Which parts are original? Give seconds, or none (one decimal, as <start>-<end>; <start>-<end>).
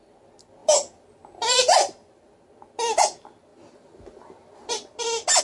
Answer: 0.0-5.4